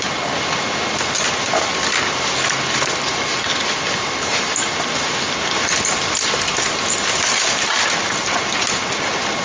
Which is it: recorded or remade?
recorded